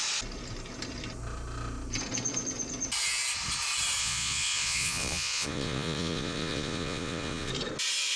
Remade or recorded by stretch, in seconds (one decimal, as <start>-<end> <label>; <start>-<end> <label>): 0.0-4.0 recorded; 4.0-7.5 remade; 7.5-8.2 recorded